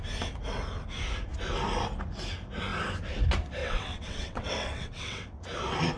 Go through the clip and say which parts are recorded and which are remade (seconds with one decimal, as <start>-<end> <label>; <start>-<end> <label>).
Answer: 0.0-3.6 recorded; 3.6-5.4 remade; 5.4-6.0 recorded